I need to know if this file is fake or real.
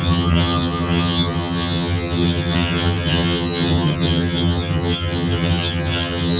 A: fake